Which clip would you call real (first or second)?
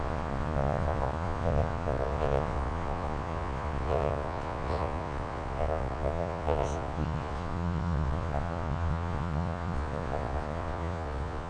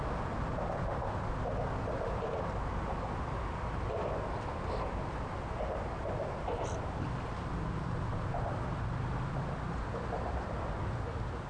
second